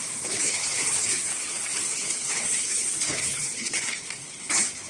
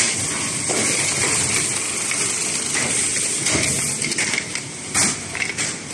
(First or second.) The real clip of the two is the second